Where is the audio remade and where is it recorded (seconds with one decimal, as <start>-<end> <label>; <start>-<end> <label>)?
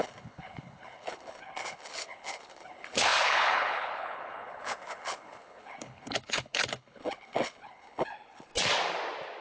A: 0.0-8.5 remade; 8.5-9.4 recorded